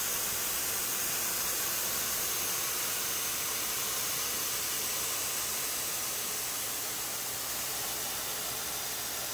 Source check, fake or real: fake